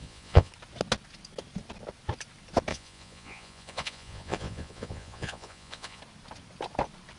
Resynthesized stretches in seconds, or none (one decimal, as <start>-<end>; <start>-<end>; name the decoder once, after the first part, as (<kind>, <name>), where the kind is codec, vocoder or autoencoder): 0.0-0.5 (vocoder, Vocos); 2.7-6.0